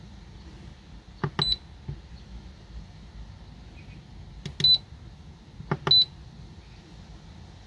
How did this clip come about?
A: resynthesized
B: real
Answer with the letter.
B